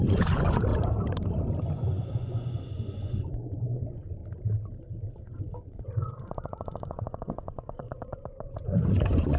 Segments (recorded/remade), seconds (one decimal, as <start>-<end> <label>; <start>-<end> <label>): 0.0-0.7 remade; 0.7-1.7 recorded; 1.7-4.2 remade; 4.2-5.2 recorded; 5.2-9.4 remade